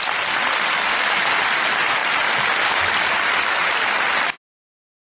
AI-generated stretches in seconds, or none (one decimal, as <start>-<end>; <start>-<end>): none